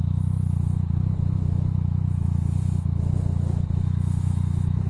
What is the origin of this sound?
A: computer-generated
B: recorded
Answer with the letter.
A